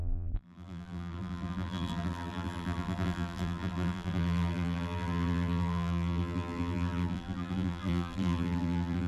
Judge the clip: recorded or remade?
remade